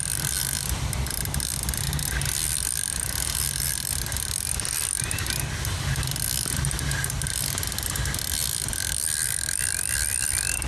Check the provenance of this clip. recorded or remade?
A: recorded